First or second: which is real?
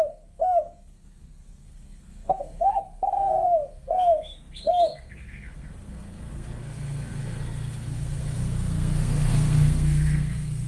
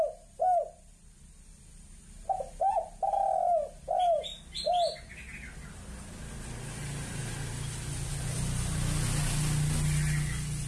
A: second